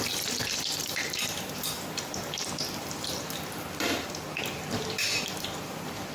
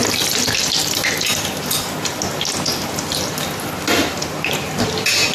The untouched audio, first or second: second